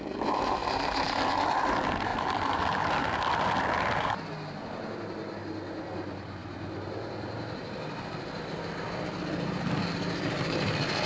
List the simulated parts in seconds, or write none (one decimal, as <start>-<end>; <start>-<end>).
0.0-2.1; 5.4-11.1